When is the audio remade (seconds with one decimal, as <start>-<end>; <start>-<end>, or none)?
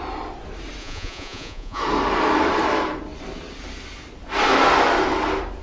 0.8-1.8